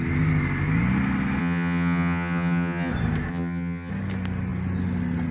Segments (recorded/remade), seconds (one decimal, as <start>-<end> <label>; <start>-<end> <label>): 0.0-1.4 recorded; 1.4-2.9 remade; 2.9-3.3 recorded; 3.3-3.9 remade; 3.9-5.3 recorded